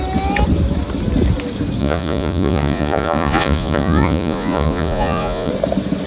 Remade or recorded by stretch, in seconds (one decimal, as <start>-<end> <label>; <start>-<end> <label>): 0.0-1.8 recorded; 1.8-5.5 remade; 5.5-6.1 recorded